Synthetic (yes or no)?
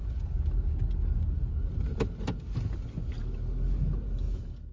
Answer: no